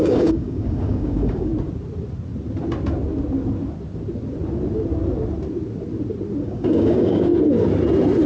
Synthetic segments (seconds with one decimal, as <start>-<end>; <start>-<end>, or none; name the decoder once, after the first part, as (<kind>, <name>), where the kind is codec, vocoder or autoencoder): 0.0-1.5 (codec, DAC); 6.4-7.3